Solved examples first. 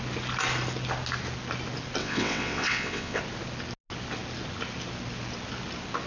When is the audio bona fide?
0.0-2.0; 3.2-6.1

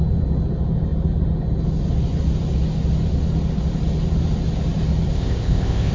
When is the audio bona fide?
0.0-5.1

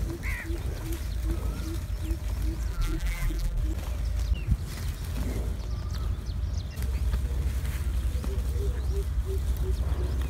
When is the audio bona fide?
0.0-2.7; 3.6-10.3